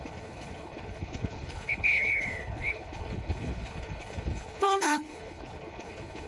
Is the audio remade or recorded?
remade